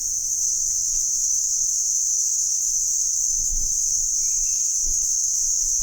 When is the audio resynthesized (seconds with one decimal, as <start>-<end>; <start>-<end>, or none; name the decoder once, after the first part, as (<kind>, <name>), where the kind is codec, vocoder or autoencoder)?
1.1-4.0 (autoencoder, DAC-VAE); 4.5-5.8